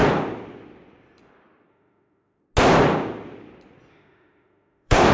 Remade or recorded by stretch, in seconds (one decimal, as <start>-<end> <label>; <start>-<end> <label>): 0.0-1.7 recorded; 1.7-2.4 remade; 2.4-3.9 recorded; 3.9-5.1 remade